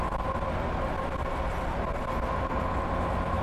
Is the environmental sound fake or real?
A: real